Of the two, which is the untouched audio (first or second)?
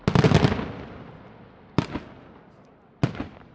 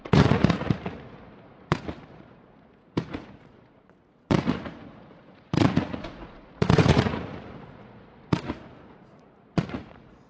first